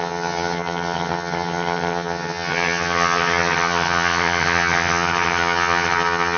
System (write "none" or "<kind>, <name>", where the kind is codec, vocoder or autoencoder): vocoder, HiFi-GAN